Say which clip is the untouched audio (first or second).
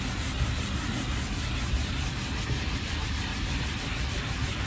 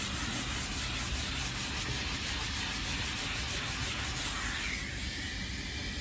second